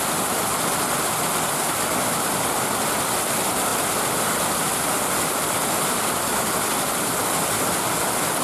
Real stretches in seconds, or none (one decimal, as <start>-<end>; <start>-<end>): 0.0-8.4